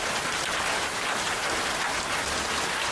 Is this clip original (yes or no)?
yes